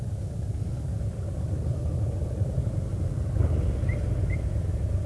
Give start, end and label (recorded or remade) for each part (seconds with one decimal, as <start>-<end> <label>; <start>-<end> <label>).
0.0-2.9 recorded; 2.9-4.0 remade; 4.0-5.1 recorded